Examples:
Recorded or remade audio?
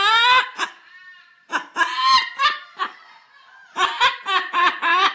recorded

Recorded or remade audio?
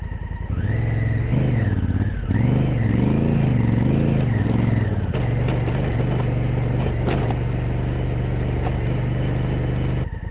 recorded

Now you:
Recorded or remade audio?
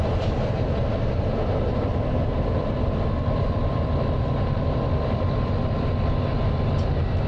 remade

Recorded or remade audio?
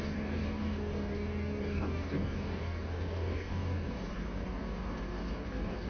remade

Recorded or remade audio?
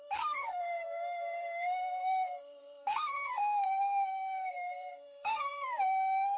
remade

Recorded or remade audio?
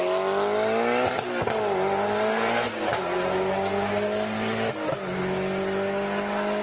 recorded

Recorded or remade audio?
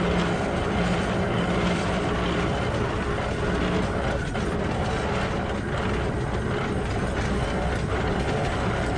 recorded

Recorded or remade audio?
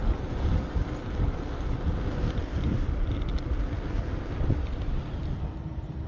recorded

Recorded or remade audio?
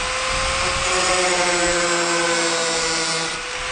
recorded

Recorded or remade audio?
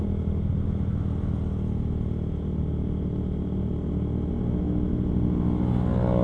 recorded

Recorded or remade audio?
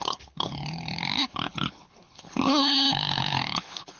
remade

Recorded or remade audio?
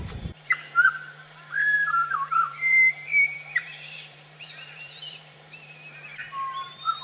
remade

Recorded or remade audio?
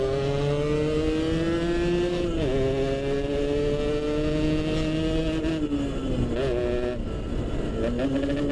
recorded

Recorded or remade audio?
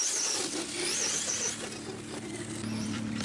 remade